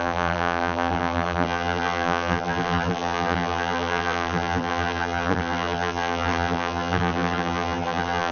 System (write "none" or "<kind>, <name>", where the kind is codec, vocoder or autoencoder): vocoder, BigVGAN v2